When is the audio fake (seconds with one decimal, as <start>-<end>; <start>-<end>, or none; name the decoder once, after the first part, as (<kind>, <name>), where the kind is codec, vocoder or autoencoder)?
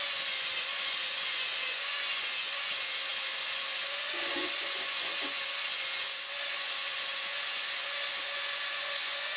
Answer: 0.0-9.4 (vocoder, Vocos)